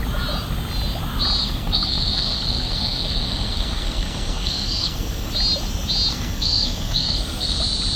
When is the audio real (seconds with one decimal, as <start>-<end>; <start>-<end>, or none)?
0.0-1.4; 5.3-6.1; 7.6-8.0